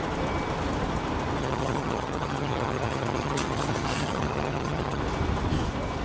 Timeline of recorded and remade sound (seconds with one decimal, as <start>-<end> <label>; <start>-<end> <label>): 0.0-1.4 recorded; 1.4-5.0 remade; 5.0-6.0 recorded